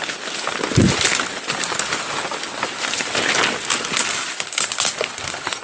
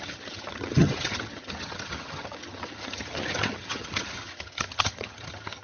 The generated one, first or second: second